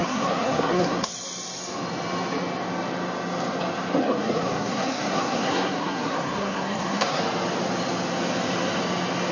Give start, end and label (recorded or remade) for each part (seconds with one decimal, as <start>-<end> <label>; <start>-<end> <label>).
0.0-1.1 remade; 1.1-4.0 recorded; 4.0-7.2 remade; 7.2-9.3 recorded